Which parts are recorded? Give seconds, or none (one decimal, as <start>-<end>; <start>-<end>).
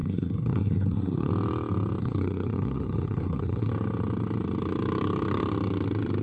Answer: 1.3-2.0; 3.7-6.2